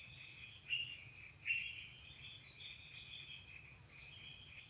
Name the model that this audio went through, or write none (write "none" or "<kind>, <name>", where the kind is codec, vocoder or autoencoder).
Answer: none